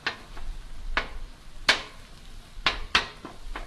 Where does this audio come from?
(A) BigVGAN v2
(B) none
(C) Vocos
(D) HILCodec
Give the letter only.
B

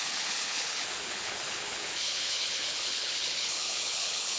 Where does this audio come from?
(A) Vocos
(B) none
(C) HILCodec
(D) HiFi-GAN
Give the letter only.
C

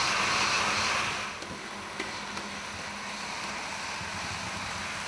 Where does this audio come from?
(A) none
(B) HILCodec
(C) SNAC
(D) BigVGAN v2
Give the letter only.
A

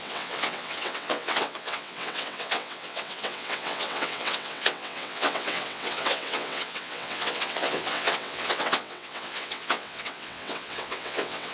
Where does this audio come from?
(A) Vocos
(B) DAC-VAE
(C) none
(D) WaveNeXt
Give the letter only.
D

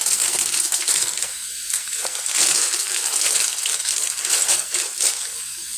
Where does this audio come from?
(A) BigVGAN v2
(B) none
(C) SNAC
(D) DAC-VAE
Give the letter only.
C